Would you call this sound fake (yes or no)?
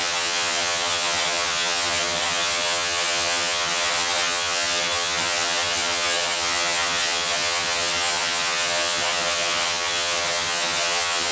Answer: yes